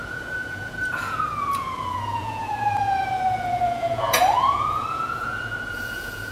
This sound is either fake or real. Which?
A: fake